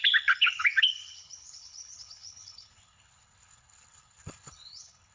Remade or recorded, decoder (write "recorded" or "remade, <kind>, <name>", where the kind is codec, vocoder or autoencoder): remade, codec, HILCodec